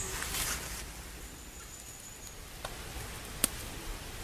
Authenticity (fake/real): real